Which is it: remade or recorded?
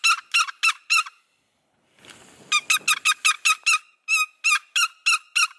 recorded